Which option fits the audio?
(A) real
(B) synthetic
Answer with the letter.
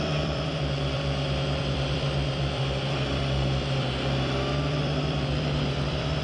B